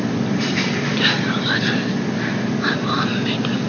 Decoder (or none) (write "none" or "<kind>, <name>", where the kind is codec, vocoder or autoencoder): none